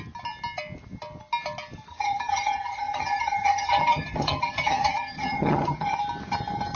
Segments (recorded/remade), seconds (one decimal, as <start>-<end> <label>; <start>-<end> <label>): 0.0-1.9 recorded; 1.9-6.0 remade; 6.0-6.8 recorded